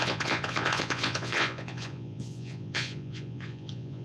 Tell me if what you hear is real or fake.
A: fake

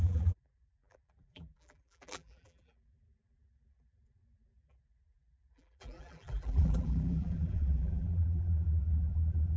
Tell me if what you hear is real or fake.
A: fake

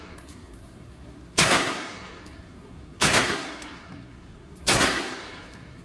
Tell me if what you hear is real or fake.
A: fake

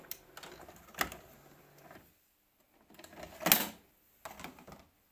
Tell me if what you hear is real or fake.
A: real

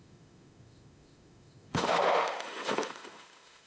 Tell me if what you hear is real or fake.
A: fake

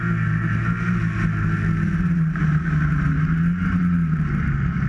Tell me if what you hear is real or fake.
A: real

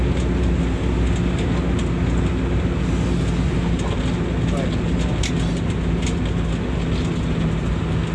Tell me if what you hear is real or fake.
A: real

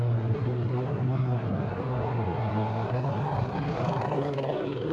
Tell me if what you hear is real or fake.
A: fake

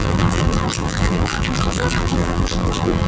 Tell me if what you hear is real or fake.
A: fake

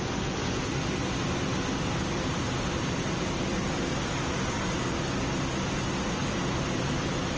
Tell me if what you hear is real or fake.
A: real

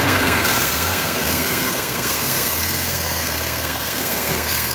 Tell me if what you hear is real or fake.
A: fake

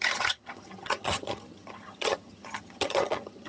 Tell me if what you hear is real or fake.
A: fake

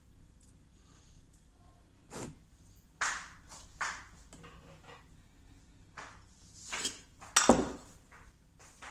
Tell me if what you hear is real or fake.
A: real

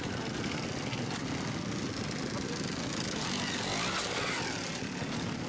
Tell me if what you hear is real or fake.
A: real